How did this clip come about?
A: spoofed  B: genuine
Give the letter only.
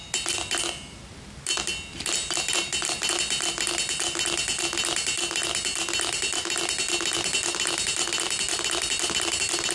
B